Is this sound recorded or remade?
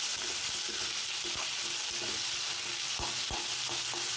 recorded